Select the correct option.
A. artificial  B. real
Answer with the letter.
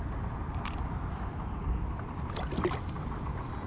B